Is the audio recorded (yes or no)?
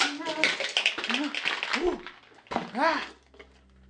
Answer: yes